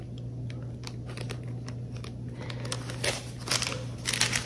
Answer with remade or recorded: recorded